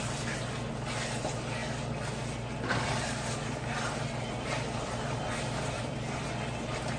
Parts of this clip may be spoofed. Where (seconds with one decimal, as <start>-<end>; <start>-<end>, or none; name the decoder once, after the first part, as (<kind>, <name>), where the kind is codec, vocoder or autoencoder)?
none